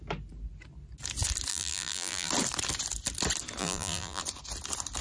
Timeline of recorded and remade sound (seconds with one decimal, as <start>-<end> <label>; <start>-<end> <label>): 0.0-1.5 recorded; 1.5-2.3 remade; 2.3-3.6 recorded; 3.6-4.2 remade; 4.2-5.0 recorded